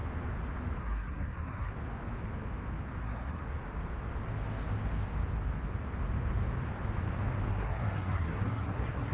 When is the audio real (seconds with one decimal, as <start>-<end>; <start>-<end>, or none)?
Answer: 0.0-0.8; 1.7-3.0; 3.4-7.5